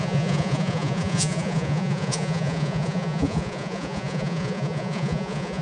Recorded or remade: remade